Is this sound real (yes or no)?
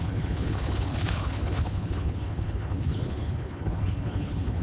no